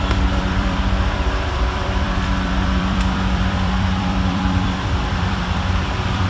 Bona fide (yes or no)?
no